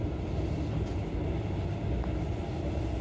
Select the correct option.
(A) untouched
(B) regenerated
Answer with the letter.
A